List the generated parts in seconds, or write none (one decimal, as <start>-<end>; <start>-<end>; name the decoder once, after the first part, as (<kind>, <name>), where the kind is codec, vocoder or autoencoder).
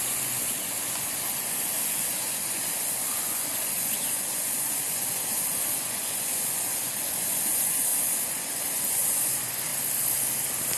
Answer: 0.0-9.7 (vocoder, Vocos)